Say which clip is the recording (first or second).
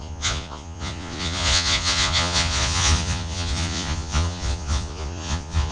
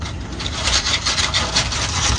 second